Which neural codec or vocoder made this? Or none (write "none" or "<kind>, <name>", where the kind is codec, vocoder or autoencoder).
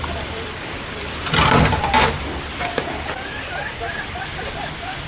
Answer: vocoder, BigVGAN v2